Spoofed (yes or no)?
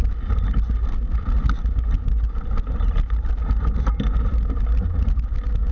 no